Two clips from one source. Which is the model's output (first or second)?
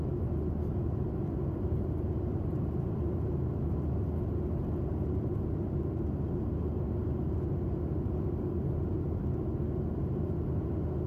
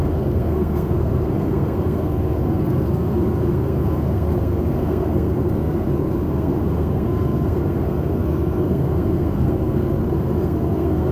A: second